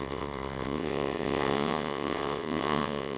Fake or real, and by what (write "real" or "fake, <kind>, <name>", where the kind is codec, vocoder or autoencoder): fake, vocoder, WaveNeXt